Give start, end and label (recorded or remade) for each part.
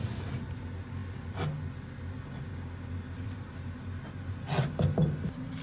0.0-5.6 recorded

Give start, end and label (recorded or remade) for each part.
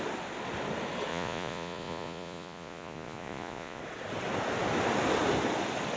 0.0-1.1 recorded; 1.1-3.8 remade; 3.8-6.0 recorded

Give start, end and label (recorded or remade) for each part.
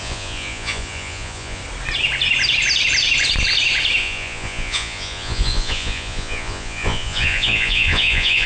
0.0-1.6 remade; 1.6-4.0 recorded; 4.0-8.5 remade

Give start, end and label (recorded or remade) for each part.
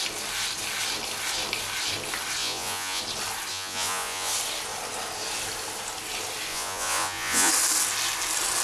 0.0-2.4 recorded; 2.4-3.0 remade; 3.0-3.5 recorded; 3.5-4.3 remade; 4.3-6.5 recorded; 6.5-7.5 remade; 7.5-8.6 recorded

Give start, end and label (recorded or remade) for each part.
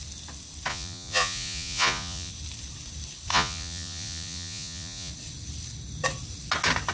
0.0-0.7 recorded; 0.7-2.3 remade; 2.3-3.3 recorded; 3.3-5.1 remade; 5.1-6.9 recorded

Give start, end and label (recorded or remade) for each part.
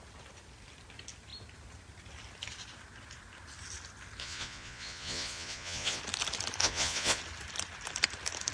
0.0-4.2 recorded; 4.2-6.0 remade; 6.0-6.6 recorded; 6.6-7.2 remade; 7.2-8.5 recorded